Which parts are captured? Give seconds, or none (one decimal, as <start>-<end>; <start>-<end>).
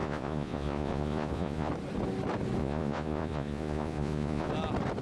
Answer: 1.7-2.6; 4.5-5.0